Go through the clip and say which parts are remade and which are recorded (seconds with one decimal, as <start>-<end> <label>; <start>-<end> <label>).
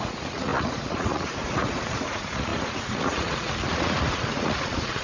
0.0-5.0 remade